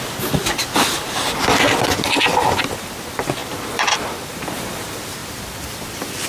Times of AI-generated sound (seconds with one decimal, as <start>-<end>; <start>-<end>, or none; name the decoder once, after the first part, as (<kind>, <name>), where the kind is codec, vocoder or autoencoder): 3.4-4.4 (vocoder, BigVGAN v2); 5.2-6.3